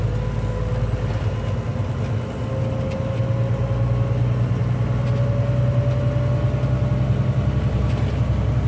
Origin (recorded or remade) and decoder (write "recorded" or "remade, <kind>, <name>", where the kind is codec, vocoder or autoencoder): recorded